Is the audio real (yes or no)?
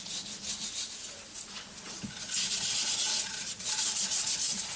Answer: no